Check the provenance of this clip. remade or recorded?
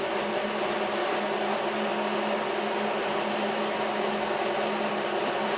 recorded